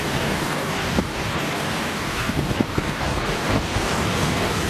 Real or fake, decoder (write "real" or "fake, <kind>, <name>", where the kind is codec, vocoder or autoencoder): fake, codec, DAC